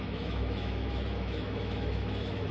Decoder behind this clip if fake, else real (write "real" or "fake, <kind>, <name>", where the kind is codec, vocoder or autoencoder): fake, autoencoder, DAC-VAE